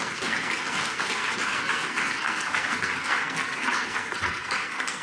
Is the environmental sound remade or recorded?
remade